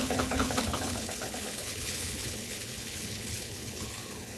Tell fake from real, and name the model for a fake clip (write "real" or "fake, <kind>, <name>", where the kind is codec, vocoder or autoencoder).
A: fake, codec, HILCodec